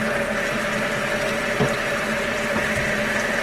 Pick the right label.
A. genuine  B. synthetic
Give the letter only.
A